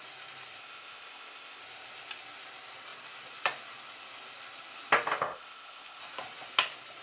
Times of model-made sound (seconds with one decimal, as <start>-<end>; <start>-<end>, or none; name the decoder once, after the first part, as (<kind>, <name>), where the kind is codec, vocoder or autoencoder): 0.6-1.6 (codec, ZipCodec); 5.2-6.0